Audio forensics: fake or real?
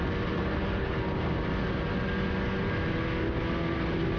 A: real